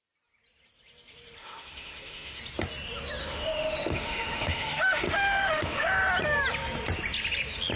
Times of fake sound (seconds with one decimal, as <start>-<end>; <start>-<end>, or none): 1.4-2.4; 3.2-5.9